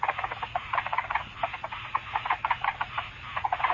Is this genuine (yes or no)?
no